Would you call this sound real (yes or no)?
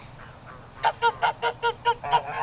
yes